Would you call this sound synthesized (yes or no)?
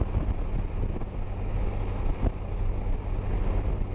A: no